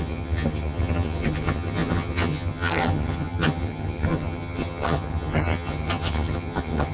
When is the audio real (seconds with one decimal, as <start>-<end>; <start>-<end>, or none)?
none